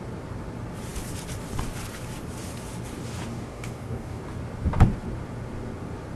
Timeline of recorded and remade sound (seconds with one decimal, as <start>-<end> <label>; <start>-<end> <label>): 0.0-3.3 recorded; 3.3-4.2 remade; 4.2-6.2 recorded